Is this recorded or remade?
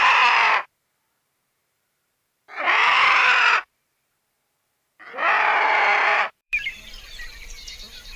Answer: remade